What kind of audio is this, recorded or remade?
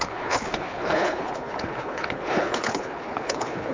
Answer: remade